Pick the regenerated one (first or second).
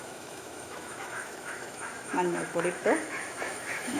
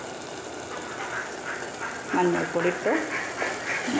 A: first